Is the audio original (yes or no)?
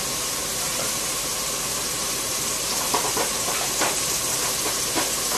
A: no